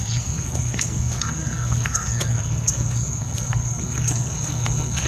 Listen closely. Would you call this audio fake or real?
fake